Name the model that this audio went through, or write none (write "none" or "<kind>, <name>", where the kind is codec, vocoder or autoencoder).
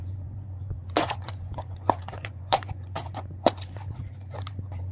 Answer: vocoder, Vocos